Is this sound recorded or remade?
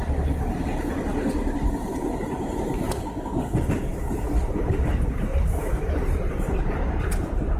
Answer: recorded